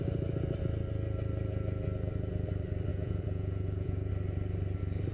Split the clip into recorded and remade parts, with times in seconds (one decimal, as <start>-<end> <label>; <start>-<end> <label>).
0.0-2.9 recorded; 2.9-4.1 remade; 4.1-5.1 recorded